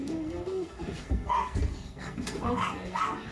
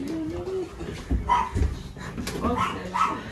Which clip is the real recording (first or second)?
second